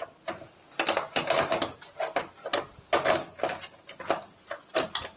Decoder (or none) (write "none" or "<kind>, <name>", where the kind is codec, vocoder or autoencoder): none